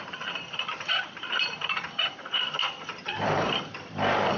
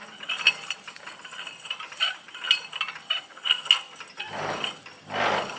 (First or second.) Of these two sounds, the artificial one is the first